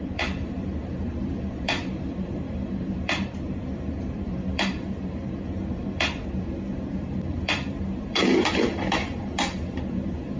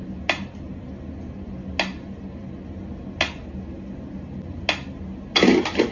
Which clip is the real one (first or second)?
second